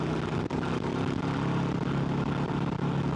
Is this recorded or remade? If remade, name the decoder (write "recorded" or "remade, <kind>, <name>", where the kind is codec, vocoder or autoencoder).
recorded